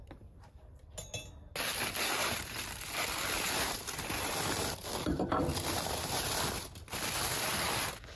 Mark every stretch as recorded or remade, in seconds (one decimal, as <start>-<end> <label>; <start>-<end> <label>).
0.0-2.2 recorded; 2.2-6.3 remade; 6.3-8.2 recorded